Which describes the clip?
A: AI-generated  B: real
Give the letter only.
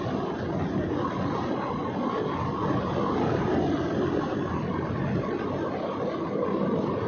B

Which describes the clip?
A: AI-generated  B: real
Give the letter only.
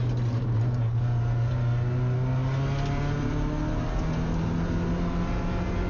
B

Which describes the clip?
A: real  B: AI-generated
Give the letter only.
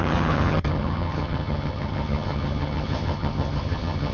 B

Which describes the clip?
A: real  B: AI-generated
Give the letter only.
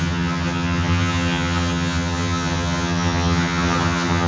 B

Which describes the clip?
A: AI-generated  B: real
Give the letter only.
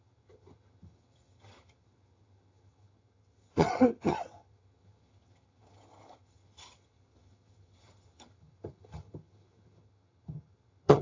A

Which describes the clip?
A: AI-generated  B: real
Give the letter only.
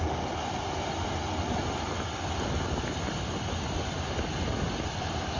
B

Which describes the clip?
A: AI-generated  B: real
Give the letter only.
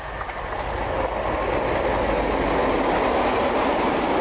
B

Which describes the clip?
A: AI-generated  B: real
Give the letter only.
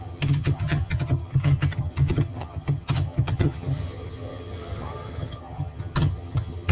A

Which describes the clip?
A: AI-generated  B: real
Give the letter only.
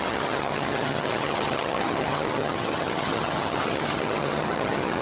A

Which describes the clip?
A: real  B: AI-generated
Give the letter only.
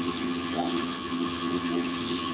B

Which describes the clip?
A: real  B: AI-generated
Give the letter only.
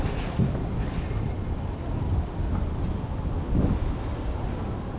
A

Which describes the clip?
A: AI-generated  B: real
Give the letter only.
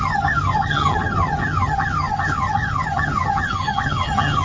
A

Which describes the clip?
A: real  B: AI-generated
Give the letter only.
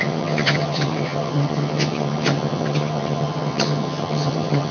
B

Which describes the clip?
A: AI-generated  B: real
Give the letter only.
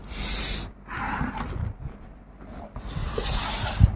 B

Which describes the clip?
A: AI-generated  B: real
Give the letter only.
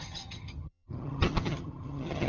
A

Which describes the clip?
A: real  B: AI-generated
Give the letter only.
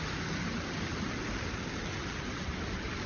A